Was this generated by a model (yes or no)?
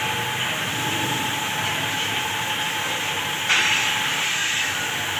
no